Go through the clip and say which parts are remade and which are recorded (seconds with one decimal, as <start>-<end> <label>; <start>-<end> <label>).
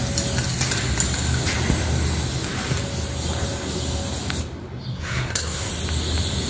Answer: 0.0-4.9 recorded; 4.9-5.7 remade; 5.7-6.5 recorded